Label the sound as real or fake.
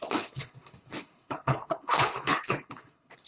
fake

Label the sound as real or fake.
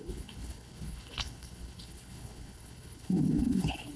fake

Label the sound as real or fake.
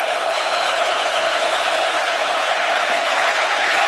fake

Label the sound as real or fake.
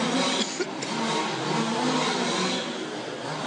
real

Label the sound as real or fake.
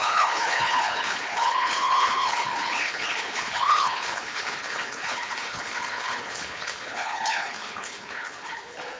fake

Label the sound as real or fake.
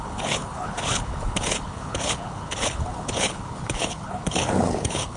fake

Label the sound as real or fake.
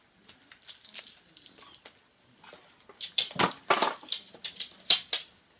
real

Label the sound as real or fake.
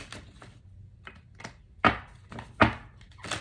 real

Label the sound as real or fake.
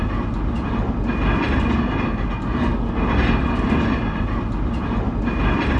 real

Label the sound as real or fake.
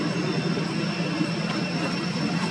real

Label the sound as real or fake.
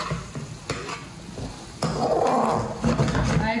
real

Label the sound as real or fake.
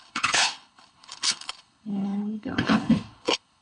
fake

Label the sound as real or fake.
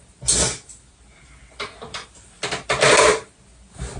real